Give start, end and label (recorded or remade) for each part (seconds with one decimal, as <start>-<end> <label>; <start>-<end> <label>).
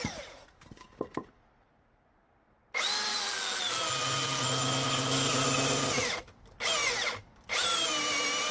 0.0-3.1 recorded; 3.1-4.4 remade; 4.4-8.5 recorded